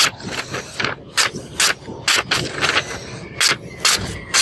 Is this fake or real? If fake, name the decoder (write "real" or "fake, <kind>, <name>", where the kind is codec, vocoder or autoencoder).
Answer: real